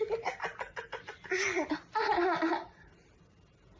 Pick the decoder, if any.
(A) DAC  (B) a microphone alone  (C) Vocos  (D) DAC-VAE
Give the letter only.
B